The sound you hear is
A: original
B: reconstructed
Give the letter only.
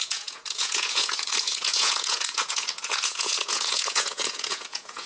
B